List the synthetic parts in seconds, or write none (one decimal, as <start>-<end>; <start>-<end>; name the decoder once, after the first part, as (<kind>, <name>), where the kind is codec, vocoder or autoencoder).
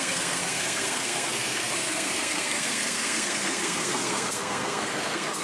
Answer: 0.0-5.4 (codec, SNAC)